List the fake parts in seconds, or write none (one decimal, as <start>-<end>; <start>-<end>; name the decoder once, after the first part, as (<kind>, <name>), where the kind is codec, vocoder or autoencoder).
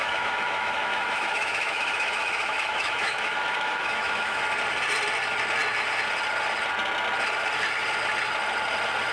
0.0-4.4 (autoencoder, DAC-VAE)